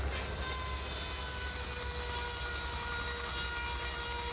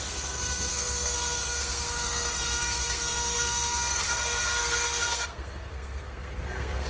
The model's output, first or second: second